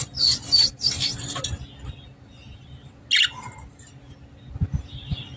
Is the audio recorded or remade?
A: recorded